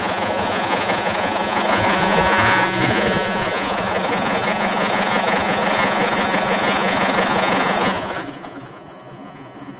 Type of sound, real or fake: fake